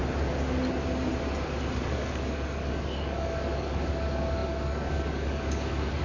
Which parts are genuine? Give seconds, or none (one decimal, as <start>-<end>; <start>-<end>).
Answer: 0.0-1.8